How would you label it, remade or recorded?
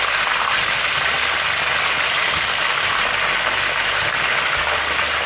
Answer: recorded